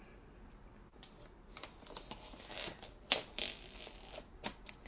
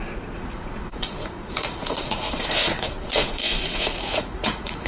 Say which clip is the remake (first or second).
second